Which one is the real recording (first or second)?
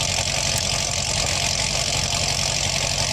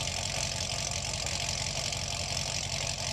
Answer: first